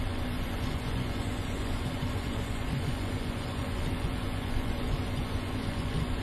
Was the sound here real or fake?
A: fake